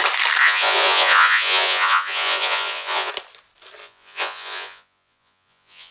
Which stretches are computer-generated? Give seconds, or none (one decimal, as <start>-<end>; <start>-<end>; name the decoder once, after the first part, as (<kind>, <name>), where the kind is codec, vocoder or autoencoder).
0.4-3.1 (vocoder, Vocos); 3.8-5.9